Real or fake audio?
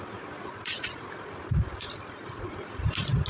real